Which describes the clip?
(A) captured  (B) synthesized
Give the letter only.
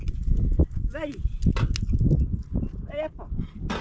A